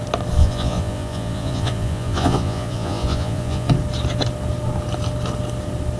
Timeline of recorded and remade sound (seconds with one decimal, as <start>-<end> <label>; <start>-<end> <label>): 0.0-0.4 recorded; 0.4-3.7 remade; 3.7-6.0 recorded